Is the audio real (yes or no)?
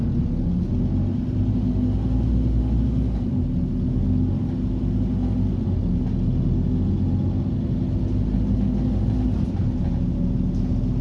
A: yes